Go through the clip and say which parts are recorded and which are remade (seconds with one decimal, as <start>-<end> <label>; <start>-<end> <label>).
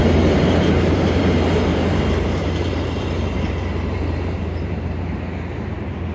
0.0-1.2 remade; 1.2-1.7 recorded; 1.7-5.0 remade; 5.0-6.1 recorded